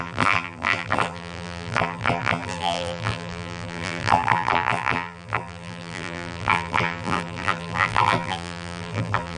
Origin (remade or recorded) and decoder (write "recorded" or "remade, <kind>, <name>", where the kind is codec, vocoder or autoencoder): remade, vocoder, BigVGAN v2